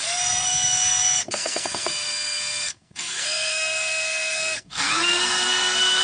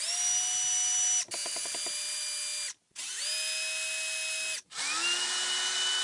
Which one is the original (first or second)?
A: second